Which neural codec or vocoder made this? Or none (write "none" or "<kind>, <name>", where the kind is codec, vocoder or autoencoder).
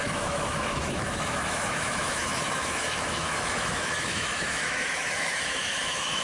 autoencoder, DAC-VAE